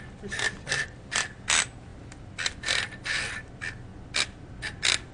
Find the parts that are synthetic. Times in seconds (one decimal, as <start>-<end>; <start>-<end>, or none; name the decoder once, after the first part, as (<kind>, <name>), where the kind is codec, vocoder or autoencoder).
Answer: none